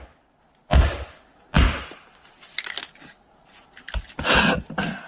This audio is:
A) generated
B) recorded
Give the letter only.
B